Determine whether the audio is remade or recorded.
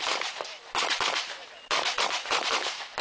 remade